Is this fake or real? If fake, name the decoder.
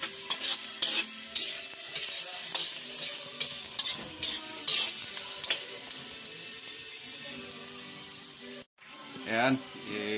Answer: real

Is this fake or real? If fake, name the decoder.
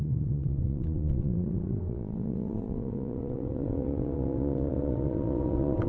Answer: fake, vocoder, WaveNeXt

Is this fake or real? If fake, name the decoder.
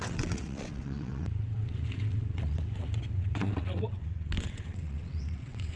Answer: fake, vocoder, WaveNeXt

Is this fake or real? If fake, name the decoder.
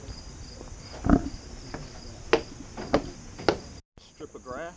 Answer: real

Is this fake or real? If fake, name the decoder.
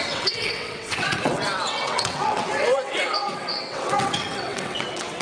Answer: fake, vocoder, WaveNeXt